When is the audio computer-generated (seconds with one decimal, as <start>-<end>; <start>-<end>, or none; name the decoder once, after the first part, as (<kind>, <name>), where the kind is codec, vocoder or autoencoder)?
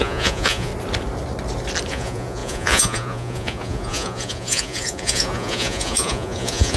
0.0-0.7 (vocoder, Vocos); 1.9-6.8